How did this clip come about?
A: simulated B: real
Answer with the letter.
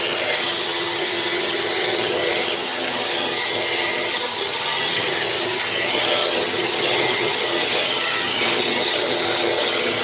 A